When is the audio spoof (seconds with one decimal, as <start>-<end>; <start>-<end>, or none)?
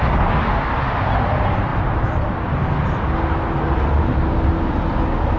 none